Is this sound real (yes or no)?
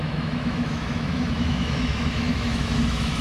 no